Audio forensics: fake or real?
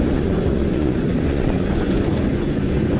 fake